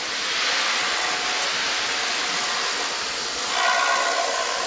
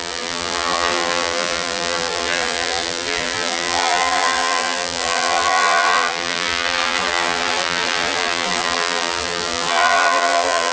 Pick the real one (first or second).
first